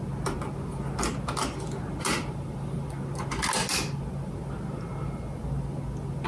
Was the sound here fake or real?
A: real